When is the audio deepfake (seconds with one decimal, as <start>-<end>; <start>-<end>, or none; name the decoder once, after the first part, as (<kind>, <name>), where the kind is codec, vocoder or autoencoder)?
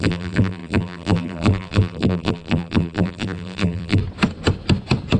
0.0-4.0 (vocoder, BigVGAN v2)